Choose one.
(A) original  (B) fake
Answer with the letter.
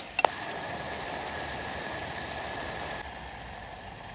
A